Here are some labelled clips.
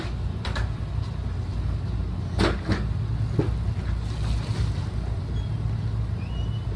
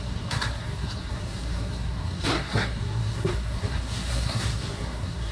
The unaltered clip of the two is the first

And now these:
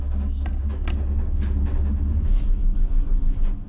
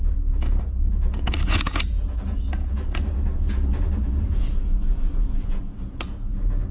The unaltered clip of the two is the first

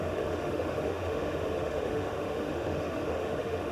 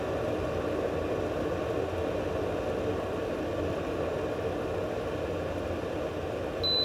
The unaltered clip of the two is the second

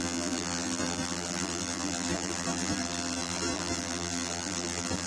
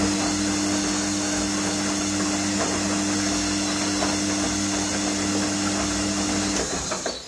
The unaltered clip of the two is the second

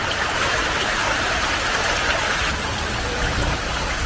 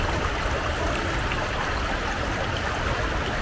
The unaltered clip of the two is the second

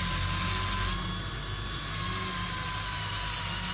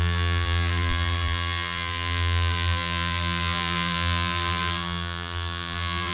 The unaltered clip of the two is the first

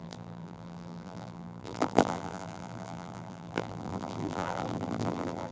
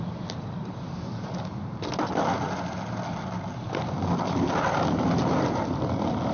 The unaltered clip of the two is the second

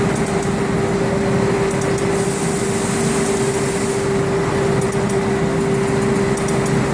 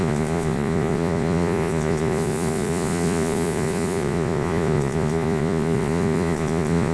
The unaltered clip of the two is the first